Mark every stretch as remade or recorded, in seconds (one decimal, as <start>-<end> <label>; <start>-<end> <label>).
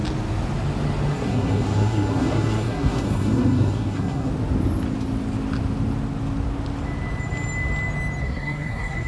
0.0-1.1 recorded; 1.1-4.3 remade; 4.3-8.2 recorded; 8.2-9.1 remade